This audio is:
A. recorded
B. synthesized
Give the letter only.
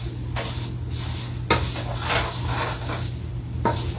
A